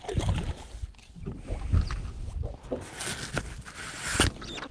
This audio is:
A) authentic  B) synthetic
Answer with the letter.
A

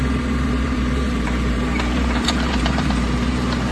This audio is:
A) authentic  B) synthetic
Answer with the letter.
B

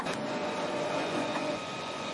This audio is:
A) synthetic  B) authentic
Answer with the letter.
A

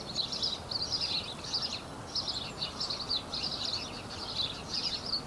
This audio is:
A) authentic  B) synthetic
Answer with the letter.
A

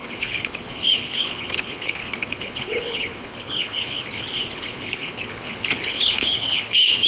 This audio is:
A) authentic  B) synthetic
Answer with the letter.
B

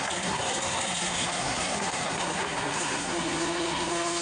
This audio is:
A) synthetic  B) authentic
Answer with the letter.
A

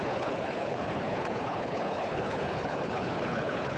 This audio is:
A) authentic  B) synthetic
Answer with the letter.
B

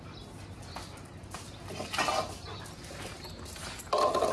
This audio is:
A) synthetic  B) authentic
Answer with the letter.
B